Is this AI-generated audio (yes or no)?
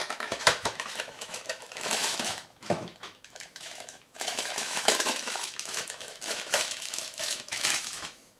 yes